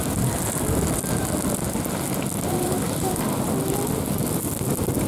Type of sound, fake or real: real